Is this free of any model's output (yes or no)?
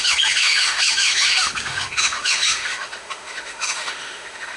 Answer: no